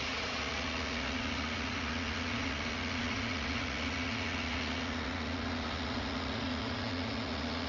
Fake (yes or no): yes